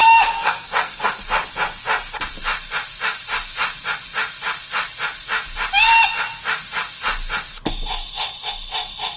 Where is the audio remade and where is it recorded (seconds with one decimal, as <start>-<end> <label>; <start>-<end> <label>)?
0.0-1.2 remade; 1.2-9.2 recorded